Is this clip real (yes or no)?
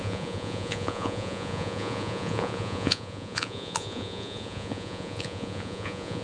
no